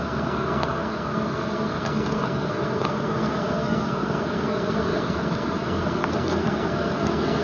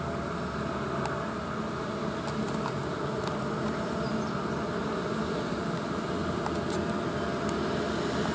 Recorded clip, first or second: second